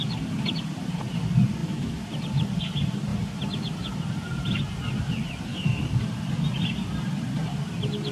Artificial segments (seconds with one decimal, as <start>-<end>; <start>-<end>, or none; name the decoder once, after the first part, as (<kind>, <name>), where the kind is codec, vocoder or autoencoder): 1.6-2.1 (autoencoder, DAC-VAE); 5.5-6.0